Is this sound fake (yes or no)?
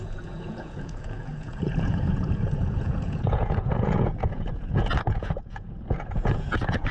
yes